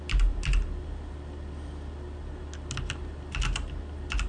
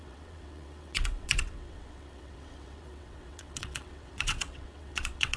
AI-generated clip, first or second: second